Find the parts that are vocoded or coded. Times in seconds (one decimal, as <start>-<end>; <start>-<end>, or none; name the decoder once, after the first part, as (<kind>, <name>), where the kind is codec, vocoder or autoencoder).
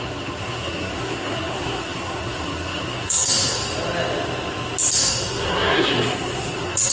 0.0-3.6 (codec, SNAC); 5.0-6.9